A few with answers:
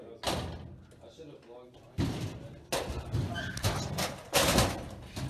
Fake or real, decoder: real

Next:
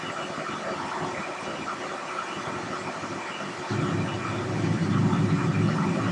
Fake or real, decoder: real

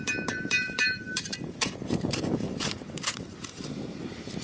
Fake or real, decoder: fake, vocoder, BigVGAN v2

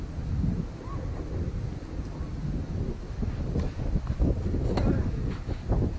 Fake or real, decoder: real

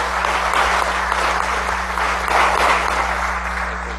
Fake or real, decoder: real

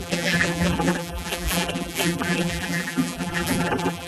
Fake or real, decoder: fake, vocoder, BigVGAN v2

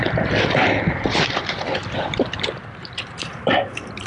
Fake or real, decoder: fake, vocoder, BigVGAN v2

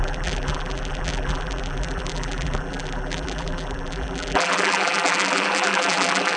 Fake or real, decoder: fake, vocoder, BigVGAN v2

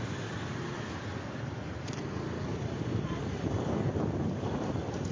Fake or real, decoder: fake, vocoder, BigVGAN v2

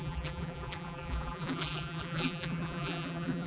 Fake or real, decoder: fake, vocoder, BigVGAN v2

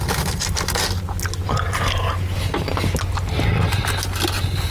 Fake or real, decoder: real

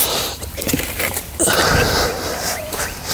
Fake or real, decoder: fake, vocoder, BigVGAN v2